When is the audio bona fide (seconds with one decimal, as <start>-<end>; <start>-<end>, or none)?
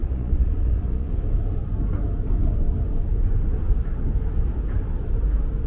1.1-5.7